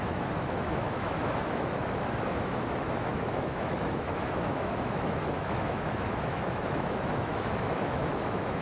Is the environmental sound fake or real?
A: fake